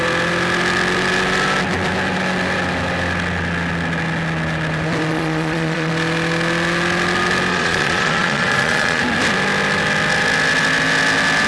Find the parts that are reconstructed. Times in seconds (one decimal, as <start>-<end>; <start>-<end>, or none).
5.1-5.9; 7.5-9.0

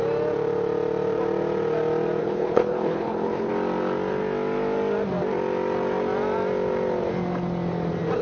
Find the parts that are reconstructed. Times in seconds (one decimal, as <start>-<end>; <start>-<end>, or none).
2.2-3.5

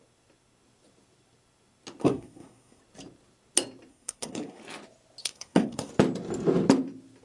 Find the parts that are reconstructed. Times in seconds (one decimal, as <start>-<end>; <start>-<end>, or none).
2.0-2.8; 3.9-4.6; 5.2-5.9

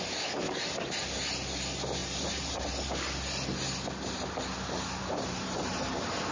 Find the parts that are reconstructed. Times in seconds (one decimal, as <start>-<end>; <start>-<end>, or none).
2.0-2.7; 5.0-6.3

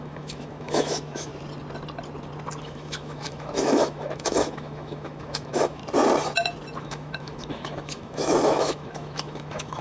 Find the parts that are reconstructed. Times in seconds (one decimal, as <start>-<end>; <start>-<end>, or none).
0.0-1.3; 2.6-5.8; 6.8-9.8